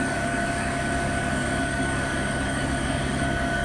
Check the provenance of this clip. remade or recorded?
remade